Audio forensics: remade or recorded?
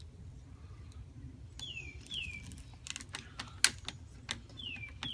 recorded